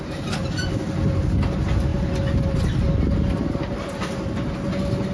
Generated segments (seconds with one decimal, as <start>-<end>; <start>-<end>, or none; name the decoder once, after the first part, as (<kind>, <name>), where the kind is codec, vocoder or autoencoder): none